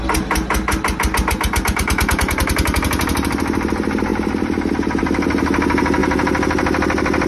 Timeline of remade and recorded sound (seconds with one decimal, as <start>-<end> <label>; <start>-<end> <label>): 0.0-7.3 recorded